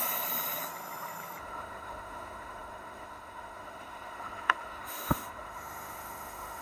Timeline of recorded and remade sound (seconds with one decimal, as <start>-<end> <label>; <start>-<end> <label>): 0.0-1.4 recorded; 1.4-6.6 remade